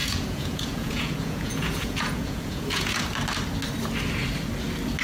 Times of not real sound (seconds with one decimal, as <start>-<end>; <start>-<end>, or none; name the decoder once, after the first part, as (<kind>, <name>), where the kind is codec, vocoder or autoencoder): 0.0-3.0 (vocoder, Vocos)